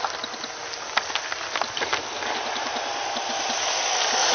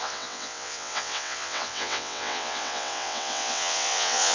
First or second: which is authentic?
first